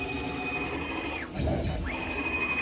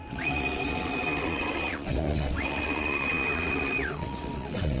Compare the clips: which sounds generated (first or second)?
second